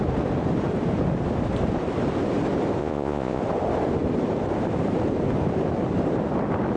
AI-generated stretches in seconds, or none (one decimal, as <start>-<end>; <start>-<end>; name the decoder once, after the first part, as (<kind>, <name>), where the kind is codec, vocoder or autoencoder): 2.8-3.4 (vocoder, Vocos)